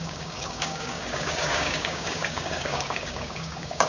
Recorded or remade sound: remade